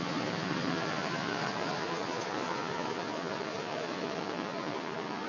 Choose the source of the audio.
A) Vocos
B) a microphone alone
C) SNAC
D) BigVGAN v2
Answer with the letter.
A